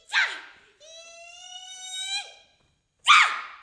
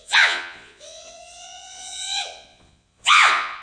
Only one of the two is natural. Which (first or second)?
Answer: first